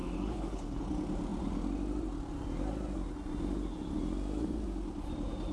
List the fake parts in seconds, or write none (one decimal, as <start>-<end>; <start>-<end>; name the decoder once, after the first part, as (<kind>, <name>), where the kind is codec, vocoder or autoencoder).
0.0-0.8 (codec, HILCodec)